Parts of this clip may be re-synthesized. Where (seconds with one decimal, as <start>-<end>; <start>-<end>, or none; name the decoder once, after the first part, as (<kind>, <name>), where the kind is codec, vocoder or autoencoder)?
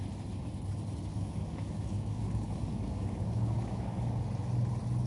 1.1-4.2 (codec, DAC)